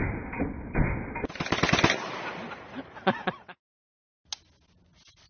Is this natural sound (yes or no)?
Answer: yes